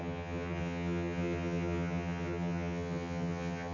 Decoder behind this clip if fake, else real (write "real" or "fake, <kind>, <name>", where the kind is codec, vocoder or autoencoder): fake, vocoder, HiFi-GAN